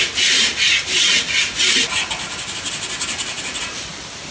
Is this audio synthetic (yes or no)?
no